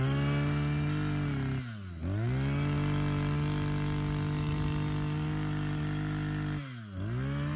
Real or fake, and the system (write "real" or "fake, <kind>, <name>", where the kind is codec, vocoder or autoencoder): real